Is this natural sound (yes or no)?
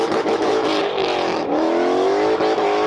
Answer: no